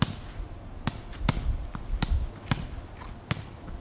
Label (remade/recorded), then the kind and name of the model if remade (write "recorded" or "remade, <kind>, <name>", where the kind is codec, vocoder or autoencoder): recorded